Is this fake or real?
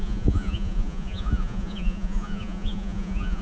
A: fake